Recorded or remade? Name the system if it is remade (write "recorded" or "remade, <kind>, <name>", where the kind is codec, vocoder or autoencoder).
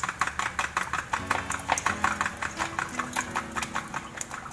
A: recorded